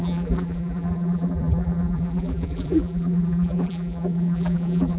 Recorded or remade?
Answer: remade